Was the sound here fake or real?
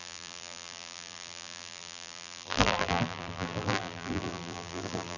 fake